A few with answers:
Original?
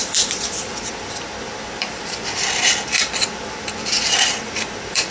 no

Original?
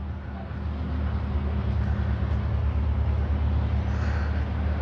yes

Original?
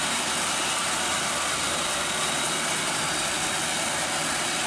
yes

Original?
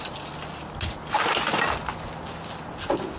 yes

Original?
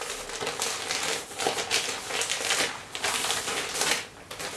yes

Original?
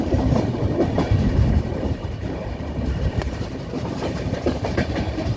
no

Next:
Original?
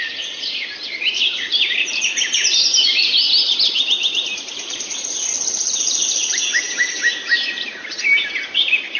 no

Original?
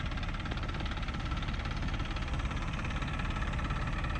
no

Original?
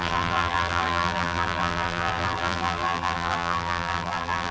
no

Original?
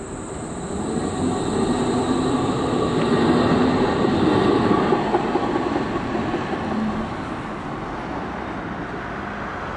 yes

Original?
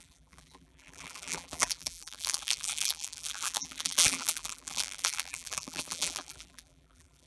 no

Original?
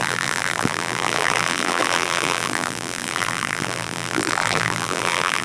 no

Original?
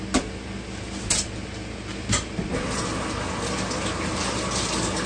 yes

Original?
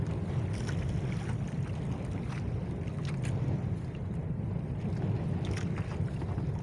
yes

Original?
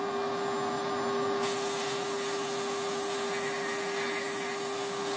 yes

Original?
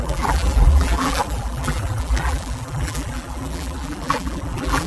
no